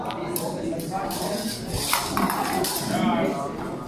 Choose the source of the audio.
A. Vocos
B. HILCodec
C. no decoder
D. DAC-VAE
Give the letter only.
C